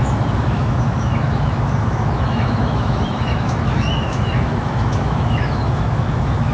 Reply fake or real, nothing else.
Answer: fake